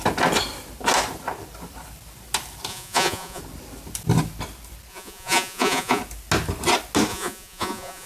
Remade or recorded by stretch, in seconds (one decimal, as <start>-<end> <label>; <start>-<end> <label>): 0.0-2.7 recorded; 2.7-3.4 remade; 3.4-4.9 recorded; 4.9-6.0 remade; 6.0-7.1 recorded; 7.1-8.1 remade